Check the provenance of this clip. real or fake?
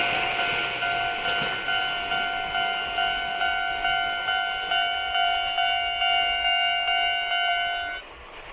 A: real